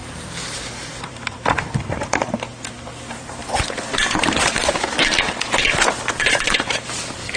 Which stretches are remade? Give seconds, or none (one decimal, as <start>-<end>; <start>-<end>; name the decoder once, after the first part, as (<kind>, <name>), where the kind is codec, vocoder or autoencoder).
0.0-3.4 (vocoder, BigVGAN v2); 6.6-7.4

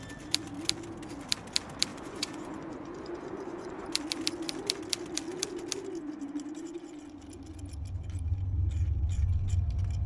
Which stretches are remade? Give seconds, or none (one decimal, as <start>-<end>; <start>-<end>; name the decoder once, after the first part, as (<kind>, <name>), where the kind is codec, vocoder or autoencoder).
1.9-3.9 (vocoder, Vocos)

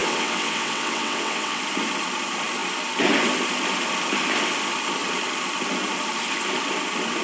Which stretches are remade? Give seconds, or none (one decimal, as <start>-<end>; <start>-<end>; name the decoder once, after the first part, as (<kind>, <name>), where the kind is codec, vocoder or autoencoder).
0.0-1.6 (vocoder, WaveNeXt)

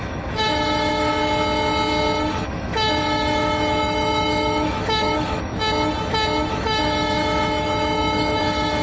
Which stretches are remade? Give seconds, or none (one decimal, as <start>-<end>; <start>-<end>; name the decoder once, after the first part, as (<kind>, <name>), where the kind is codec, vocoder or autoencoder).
0.0-1.1 (autoencoder, DAC-VAE); 2.3-5.5; 6.5-8.8

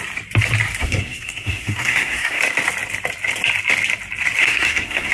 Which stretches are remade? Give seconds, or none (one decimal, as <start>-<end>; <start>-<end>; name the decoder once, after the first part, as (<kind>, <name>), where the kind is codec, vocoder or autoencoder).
0.8-2.4 (codec, SNAC); 4.4-5.1